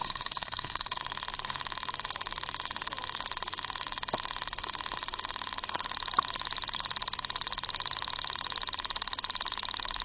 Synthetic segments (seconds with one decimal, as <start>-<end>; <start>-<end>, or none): 0.0-1.0